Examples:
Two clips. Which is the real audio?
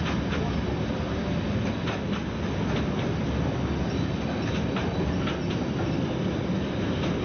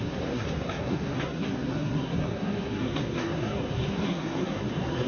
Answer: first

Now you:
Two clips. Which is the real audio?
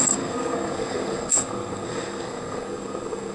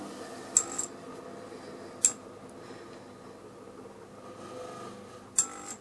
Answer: second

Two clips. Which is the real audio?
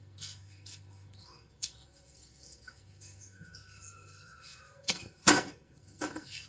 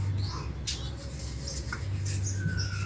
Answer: second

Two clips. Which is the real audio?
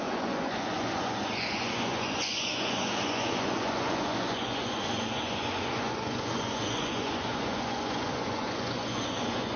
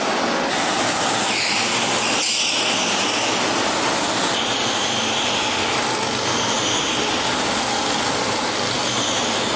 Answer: second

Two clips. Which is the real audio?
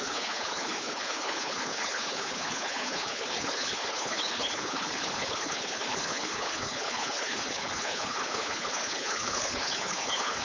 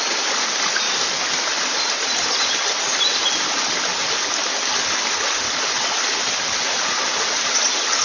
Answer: second